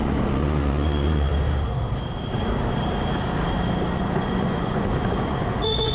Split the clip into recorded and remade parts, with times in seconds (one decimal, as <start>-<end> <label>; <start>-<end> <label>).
0.0-1.3 remade; 1.3-3.9 recorded; 3.9-5.9 remade